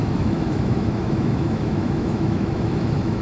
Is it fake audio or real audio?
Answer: fake